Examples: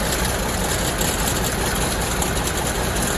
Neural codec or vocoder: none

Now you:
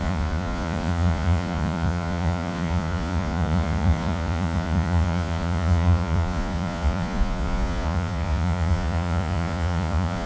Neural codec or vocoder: vocoder, Vocos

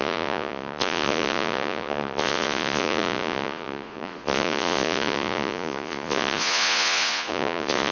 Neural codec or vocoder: vocoder, Vocos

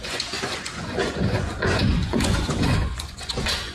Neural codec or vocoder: vocoder, Vocos